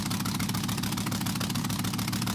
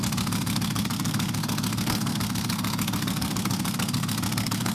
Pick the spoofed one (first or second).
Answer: second